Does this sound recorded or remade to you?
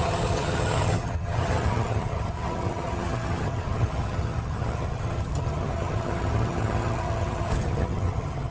remade